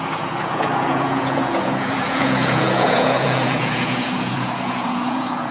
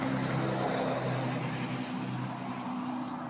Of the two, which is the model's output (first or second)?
first